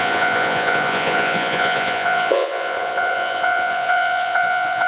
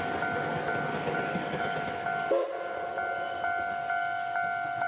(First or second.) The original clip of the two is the second